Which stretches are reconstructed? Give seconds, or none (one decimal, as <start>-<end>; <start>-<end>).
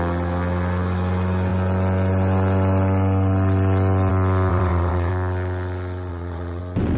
4.5-5.1; 6.1-6.6